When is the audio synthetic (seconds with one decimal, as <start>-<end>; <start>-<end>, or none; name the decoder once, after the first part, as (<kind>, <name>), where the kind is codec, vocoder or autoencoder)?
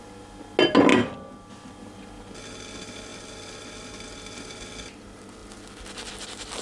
3.1-4.7 (vocoder, BigVGAN v2)